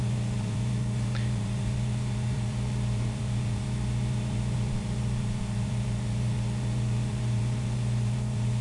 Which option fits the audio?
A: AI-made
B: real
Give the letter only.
A